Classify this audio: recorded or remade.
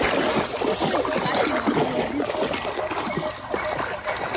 recorded